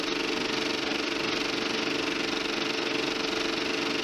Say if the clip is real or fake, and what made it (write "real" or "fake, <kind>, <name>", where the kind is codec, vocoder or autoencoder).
real